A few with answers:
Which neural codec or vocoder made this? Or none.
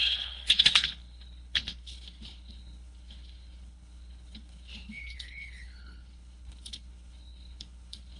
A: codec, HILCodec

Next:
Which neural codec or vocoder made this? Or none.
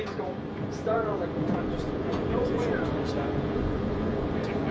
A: vocoder, Vocos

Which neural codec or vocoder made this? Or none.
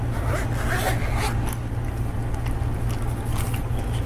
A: none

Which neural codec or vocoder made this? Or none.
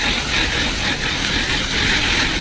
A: none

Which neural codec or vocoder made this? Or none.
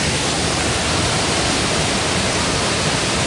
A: none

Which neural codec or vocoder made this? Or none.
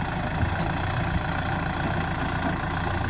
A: none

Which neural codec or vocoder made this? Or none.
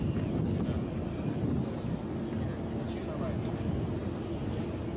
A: none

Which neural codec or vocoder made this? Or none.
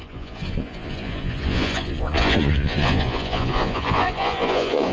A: vocoder, Vocos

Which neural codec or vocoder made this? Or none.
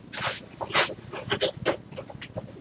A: none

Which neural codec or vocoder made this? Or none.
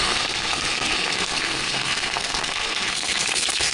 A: codec, SNAC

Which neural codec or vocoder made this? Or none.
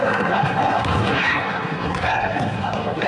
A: codec, SNAC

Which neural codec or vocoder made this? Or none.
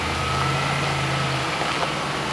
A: none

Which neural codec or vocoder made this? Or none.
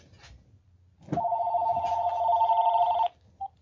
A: none